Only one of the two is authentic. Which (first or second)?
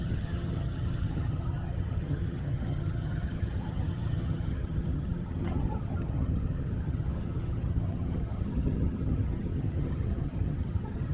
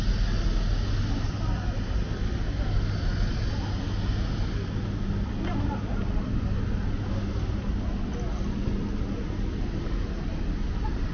second